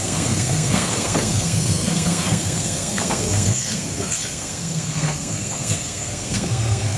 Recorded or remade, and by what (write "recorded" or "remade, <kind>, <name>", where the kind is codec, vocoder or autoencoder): remade, codec, SNAC